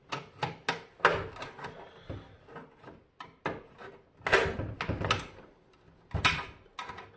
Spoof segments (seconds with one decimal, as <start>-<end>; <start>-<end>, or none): none